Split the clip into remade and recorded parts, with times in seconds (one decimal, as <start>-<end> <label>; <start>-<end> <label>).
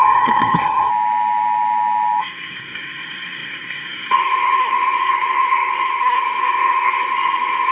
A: 0.0-0.9 remade; 0.9-2.2 recorded; 2.2-7.7 remade